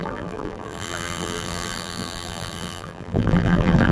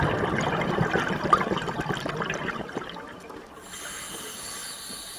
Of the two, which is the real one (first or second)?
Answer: second